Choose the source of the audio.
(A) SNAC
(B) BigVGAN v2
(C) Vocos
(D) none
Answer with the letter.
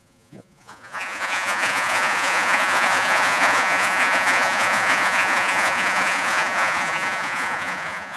C